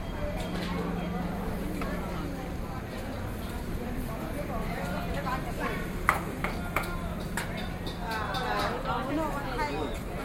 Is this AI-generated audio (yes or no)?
no